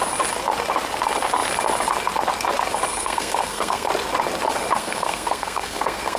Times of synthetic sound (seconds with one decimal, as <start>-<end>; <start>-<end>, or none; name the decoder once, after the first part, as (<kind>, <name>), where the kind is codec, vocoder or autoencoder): 2.9-3.9 (codec, SNAC); 4.8-6.2